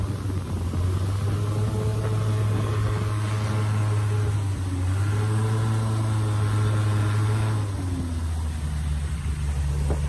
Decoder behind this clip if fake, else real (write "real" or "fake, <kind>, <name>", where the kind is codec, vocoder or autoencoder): real